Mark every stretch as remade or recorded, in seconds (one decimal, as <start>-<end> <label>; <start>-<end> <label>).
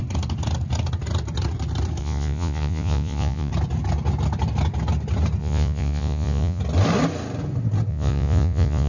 0.0-2.0 recorded; 2.0-3.5 remade; 3.5-5.4 recorded; 5.4-6.6 remade; 6.6-7.9 recorded; 7.9-8.9 remade